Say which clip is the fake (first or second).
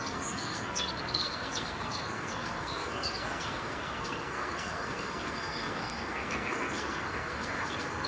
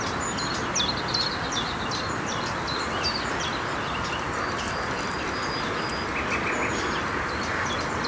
first